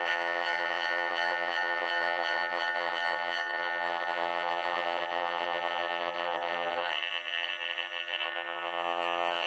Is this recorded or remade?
remade